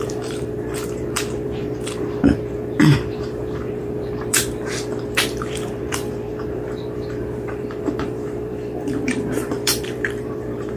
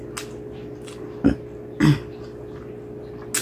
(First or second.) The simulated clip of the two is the first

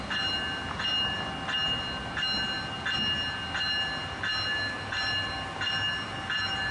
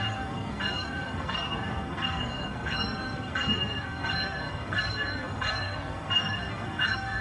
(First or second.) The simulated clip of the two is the second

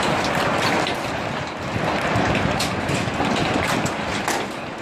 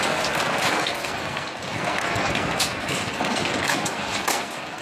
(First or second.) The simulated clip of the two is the second